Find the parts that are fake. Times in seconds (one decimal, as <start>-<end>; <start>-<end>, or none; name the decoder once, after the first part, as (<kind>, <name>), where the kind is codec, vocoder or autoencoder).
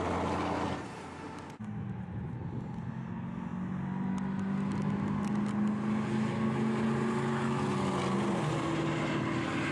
none